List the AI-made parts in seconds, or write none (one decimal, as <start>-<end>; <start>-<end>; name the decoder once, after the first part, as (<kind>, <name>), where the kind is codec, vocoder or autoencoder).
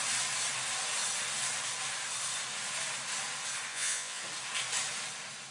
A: 3.7-4.2 (vocoder, Vocos)